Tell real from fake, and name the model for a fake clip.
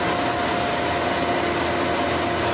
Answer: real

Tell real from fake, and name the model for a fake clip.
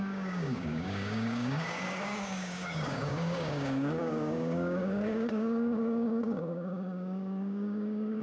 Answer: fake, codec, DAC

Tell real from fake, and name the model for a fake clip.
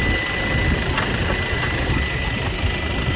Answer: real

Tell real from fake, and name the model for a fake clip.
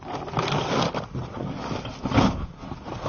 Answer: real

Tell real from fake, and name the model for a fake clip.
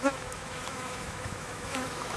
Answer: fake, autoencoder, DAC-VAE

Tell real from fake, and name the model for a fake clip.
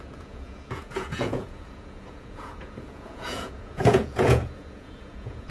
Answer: fake, vocoder, Vocos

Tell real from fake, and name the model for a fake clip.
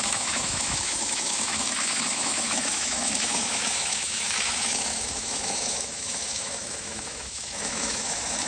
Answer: fake, autoencoder, DAC-VAE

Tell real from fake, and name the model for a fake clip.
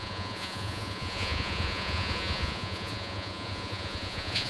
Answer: fake, vocoder, Vocos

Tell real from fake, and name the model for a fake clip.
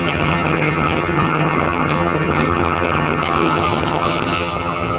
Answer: fake, vocoder, HiFi-GAN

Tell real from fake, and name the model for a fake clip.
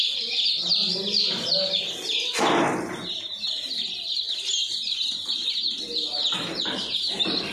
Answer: real